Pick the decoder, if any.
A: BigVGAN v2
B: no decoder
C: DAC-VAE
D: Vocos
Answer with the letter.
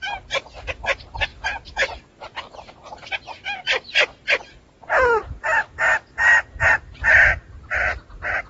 B